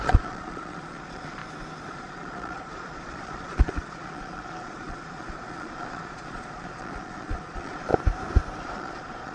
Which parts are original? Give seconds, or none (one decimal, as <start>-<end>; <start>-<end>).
1.4-1.9; 7.9-8.6